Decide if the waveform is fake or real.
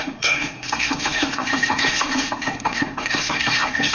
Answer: fake